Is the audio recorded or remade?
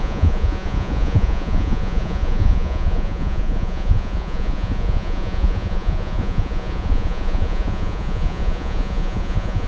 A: remade